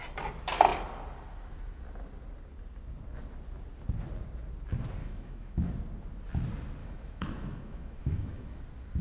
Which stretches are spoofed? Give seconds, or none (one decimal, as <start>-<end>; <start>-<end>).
5.0-5.7; 6.8-8.6